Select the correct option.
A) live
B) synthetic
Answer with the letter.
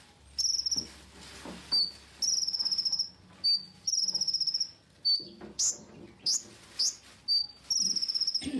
A